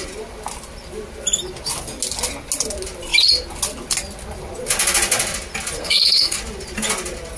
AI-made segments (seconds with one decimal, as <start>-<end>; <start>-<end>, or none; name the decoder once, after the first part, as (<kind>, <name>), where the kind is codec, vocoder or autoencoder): 5.8-6.4 (codec, SNAC)